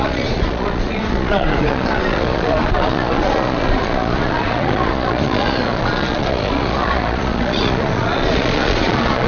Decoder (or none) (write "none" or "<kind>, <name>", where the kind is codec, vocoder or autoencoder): vocoder, Vocos